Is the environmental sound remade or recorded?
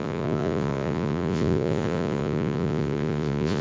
remade